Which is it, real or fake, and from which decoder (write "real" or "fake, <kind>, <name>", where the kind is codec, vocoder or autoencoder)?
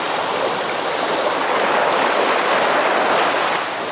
real